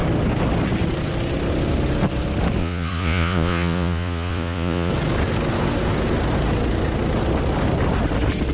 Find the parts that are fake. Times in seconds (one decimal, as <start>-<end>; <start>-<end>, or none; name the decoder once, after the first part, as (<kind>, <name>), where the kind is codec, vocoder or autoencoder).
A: 2.6-4.9 (vocoder, Vocos)